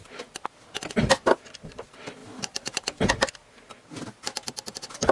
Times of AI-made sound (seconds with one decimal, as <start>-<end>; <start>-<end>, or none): 2.2-3.3